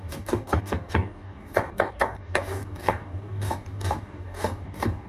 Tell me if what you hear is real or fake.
fake